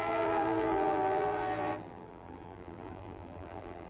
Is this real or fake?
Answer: fake